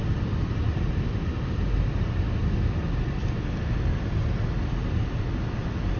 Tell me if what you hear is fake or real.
real